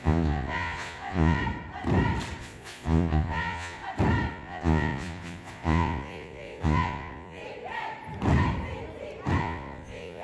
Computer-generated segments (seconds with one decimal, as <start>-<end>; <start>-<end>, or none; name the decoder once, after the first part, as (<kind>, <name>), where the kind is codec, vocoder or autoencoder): 0.0-1.4 (vocoder, Vocos); 2.4-3.8; 4.3-7.4; 9.4-10.2